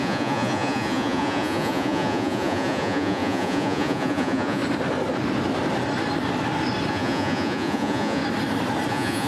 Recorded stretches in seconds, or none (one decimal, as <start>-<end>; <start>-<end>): 4.6-6.9; 8.2-8.9